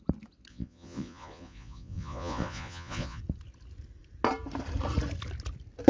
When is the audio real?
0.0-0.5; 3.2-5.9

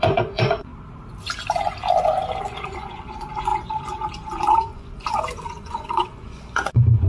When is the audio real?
0.7-2.4

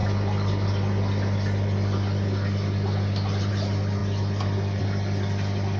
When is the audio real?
0.0-5.8

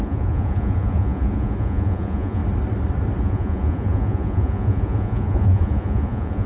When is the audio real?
2.4-3.2

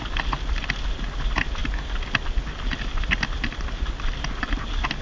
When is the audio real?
0.0-5.0

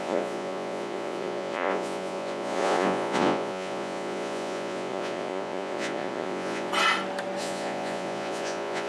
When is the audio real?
6.7-7.4